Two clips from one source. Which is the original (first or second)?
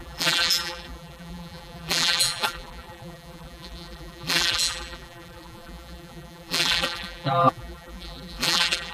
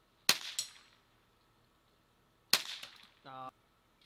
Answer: second